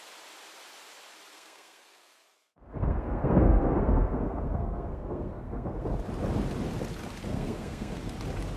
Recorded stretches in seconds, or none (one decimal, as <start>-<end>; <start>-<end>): 0.0-1.3; 5.9-7.3; 8.0-8.6